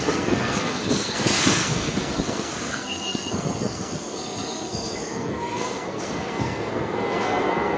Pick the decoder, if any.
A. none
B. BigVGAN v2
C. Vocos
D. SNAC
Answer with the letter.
D